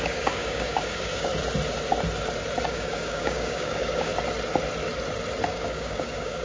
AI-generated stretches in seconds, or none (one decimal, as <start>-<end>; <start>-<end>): 0.0-1.3; 2.7-4.1; 5.5-6.4